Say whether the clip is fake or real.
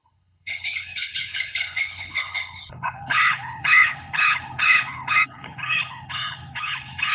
fake